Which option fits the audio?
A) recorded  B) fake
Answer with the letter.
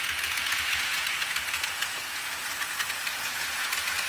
B